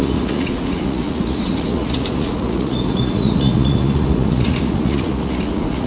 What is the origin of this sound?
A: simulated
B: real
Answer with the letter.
A